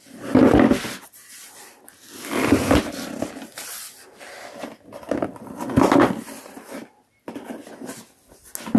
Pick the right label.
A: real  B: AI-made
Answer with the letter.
A